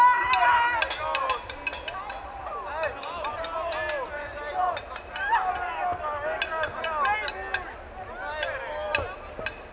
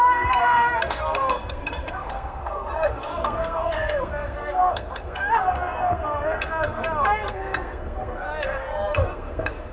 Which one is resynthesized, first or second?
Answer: second